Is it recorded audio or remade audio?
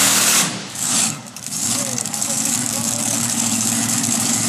remade